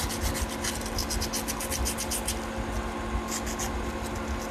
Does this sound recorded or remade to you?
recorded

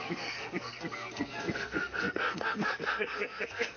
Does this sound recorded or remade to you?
remade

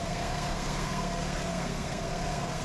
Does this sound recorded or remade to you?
remade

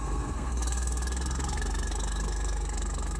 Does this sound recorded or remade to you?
remade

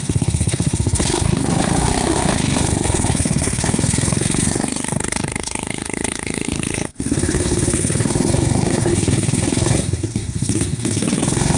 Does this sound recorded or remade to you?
remade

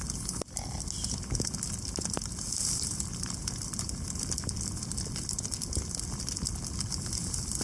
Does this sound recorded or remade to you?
recorded